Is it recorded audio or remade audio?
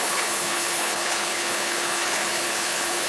remade